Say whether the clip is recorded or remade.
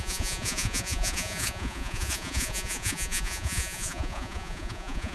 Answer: remade